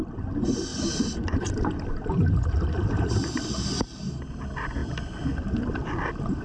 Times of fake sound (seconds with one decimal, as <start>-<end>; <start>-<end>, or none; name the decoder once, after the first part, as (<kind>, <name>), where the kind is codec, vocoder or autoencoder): 0.7-2.1 (vocoder, BigVGAN v2)